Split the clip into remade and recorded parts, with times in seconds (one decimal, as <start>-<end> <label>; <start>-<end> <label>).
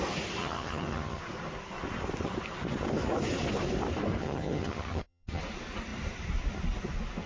0.0-0.4 recorded; 0.4-1.2 remade; 1.2-4.2 recorded; 4.2-5.4 remade; 5.4-7.3 recorded